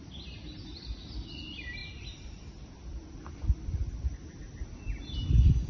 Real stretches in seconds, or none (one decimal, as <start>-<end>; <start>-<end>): 0.0-1.8; 4.4-5.7

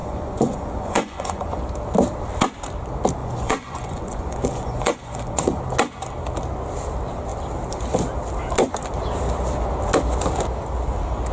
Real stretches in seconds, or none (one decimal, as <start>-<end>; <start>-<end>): 1.6-3.2; 5.6-11.3

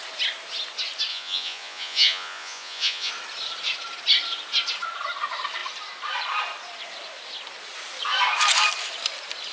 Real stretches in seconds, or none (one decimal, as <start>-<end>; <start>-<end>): 0.0-1.1; 3.1-9.5

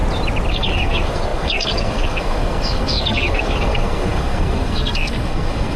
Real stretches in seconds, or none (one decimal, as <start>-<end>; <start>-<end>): 0.0-0.5

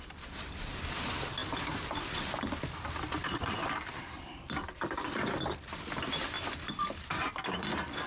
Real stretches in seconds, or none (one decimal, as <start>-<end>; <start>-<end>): 0.0-1.4; 2.5-3.2; 7.3-8.1

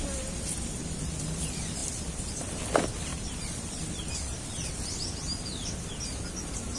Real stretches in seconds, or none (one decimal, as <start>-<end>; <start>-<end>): 0.0-6.8